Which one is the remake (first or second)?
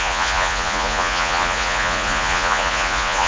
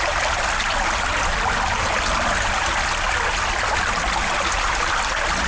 first